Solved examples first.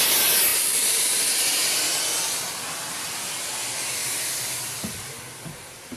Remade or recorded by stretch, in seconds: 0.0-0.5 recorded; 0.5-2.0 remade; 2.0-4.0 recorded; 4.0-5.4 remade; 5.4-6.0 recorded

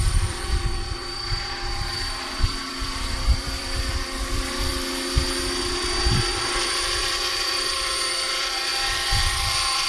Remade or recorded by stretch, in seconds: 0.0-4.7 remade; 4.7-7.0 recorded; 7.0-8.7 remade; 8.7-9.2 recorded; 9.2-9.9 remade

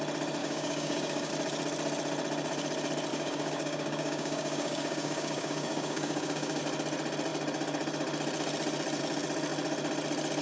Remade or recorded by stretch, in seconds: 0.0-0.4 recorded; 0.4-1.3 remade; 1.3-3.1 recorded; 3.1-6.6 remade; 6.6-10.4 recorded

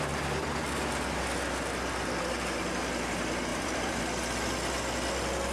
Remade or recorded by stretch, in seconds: 0.0-3.5 recorded; 3.5-4.0 remade; 4.0-5.5 recorded

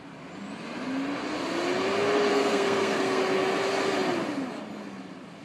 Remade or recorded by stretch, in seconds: 0.0-2.3 recorded; 2.3-3.2 remade; 3.2-5.4 recorded

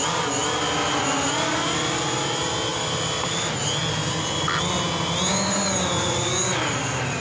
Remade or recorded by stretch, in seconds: 0.0-7.2 recorded

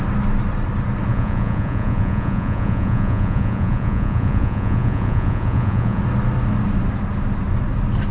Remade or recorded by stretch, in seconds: 0.0-1.1 recorded; 1.1-6.0 remade; 6.0-8.1 recorded

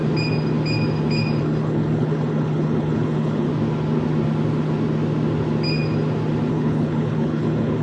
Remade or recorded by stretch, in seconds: 0.0-1.4 recorded; 1.4-3.5 remade; 3.5-6.5 recorded; 6.5-7.8 remade